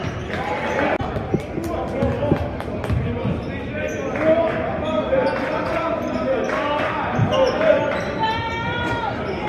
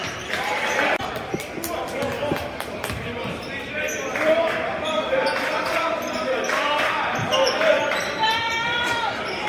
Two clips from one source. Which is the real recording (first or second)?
first